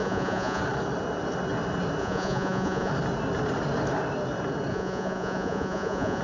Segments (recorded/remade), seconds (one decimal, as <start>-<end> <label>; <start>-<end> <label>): 0.0-0.6 remade; 0.6-2.0 recorded; 2.0-2.9 remade; 2.9-4.7 recorded; 4.7-6.2 remade